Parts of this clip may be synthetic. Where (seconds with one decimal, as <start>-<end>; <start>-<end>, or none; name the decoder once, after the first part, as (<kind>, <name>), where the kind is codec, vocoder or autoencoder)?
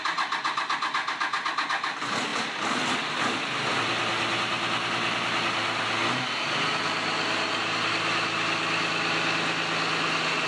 none